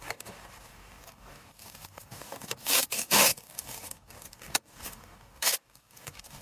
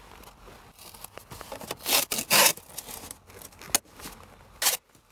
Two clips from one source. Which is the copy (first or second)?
first